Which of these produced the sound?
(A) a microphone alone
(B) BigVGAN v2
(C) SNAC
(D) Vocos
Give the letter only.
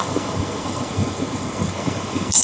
C